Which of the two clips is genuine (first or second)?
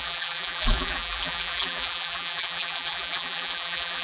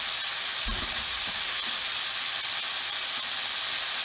second